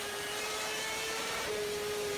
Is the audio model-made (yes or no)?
yes